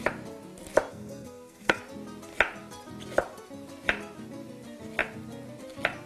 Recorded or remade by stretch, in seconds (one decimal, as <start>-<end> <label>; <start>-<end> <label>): 0.0-0.9 recorded; 0.9-1.8 remade; 1.8-6.1 recorded